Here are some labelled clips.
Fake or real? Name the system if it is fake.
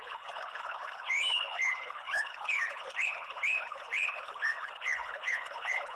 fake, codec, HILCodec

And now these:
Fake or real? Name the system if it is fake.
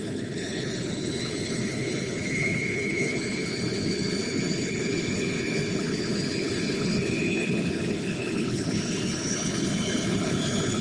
fake, codec, HILCodec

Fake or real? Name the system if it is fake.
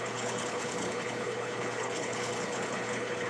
fake, codec, HILCodec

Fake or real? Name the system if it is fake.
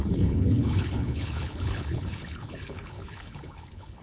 fake, codec, HILCodec